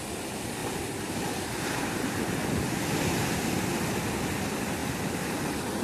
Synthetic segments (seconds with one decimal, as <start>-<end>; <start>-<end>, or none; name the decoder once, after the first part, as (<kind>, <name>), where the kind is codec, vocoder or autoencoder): 0.6-4.1 (vocoder, BigVGAN v2)